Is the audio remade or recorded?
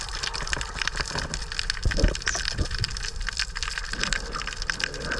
recorded